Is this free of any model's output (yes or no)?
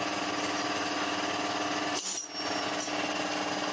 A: yes